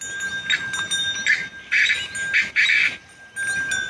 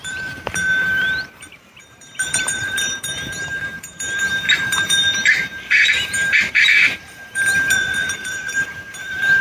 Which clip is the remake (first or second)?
second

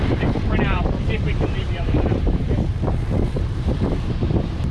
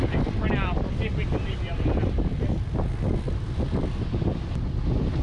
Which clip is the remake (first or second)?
first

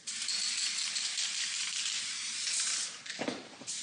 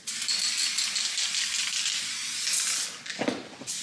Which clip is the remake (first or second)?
first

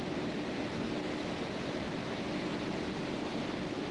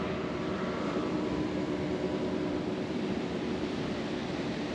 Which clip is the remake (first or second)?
second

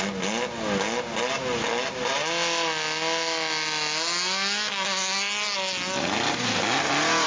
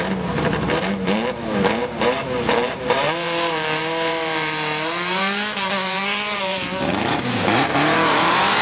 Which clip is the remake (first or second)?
second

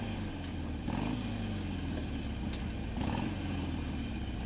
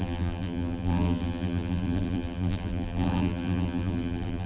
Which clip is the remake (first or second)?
second